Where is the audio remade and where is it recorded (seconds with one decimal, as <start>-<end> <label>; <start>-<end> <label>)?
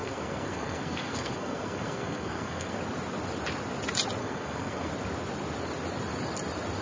0.0-2.8 remade; 2.8-4.2 recorded; 4.2-4.9 remade; 4.9-6.8 recorded